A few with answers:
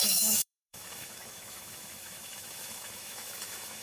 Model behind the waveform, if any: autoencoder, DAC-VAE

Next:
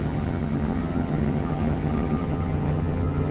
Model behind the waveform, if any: vocoder, HiFi-GAN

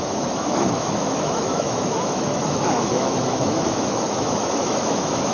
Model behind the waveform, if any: autoencoder, DAC-VAE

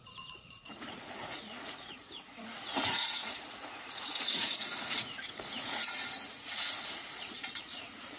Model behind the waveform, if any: vocoder, Vocos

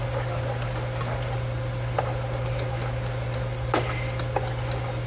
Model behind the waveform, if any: none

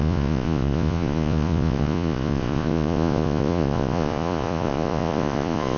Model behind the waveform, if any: vocoder, Vocos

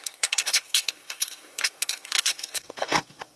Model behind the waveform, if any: codec, SNAC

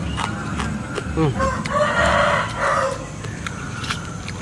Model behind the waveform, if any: none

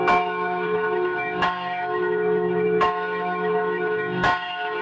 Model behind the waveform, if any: autoencoder, DAC-VAE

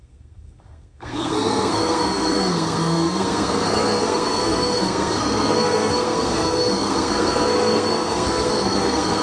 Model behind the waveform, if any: codec, SNAC